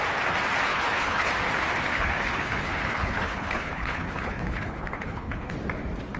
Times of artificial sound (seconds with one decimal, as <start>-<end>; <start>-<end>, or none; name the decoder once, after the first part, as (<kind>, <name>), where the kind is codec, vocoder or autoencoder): 0.7-1.3 (codec, HILCodec); 1.9-5.5